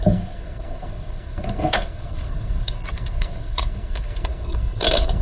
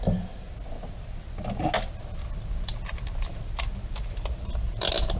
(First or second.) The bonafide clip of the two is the second